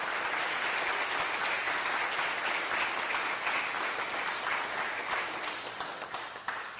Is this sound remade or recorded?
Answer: recorded